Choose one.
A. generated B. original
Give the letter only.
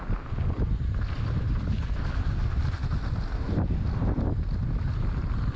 B